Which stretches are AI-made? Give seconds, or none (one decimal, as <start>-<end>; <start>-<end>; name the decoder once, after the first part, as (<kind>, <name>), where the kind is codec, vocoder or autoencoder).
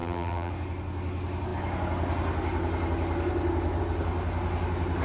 0.0-0.5 (vocoder, BigVGAN v2)